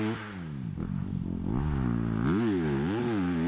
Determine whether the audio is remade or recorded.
recorded